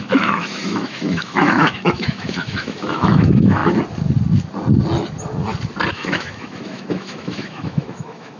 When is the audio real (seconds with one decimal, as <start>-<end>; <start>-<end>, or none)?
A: 3.6-5.9